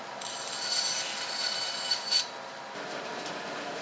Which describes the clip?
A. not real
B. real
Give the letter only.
B